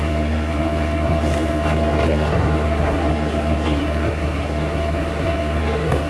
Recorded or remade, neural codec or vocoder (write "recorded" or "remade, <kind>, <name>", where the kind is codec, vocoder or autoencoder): remade, codec, SNAC